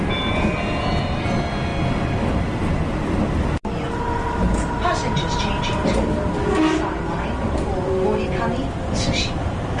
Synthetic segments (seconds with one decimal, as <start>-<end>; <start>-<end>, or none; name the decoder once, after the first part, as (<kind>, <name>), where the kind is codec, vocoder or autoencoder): none

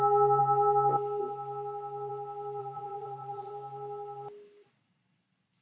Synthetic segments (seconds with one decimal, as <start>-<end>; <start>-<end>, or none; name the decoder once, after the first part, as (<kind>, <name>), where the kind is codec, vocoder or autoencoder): 2.6-3.5 (vocoder, Vocos)

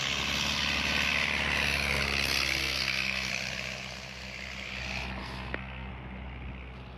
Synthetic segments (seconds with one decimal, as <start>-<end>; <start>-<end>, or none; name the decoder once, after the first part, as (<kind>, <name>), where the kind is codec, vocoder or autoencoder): 2.6-3.3 (codec, SNAC); 5.2-5.9